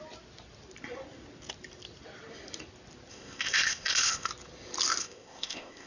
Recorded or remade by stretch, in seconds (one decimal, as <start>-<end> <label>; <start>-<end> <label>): 0.0-3.1 recorded; 3.1-4.3 remade; 4.3-5.0 recorded; 5.0-5.9 remade